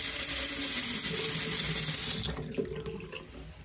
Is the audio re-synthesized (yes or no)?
no